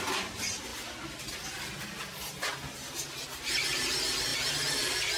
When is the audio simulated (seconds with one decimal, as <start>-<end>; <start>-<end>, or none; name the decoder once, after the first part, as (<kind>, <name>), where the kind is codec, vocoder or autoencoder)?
none